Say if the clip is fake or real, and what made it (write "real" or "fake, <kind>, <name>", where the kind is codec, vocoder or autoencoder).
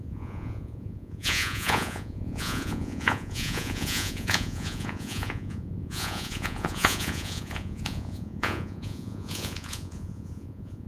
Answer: fake, vocoder, Vocos